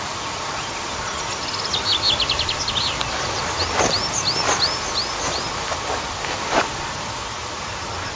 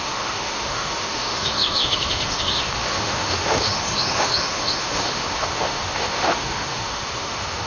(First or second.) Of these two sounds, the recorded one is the first